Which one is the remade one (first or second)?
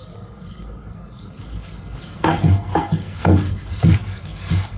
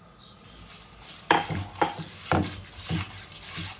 first